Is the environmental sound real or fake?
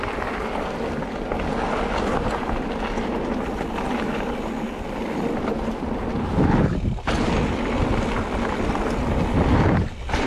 real